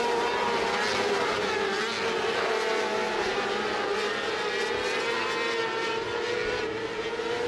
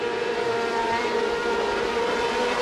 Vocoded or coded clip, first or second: second